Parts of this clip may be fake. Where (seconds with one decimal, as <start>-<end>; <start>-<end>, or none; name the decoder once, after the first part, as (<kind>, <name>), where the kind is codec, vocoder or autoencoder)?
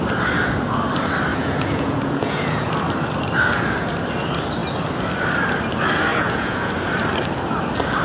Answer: 1.3-2.7 (vocoder, Vocos); 6.1-6.7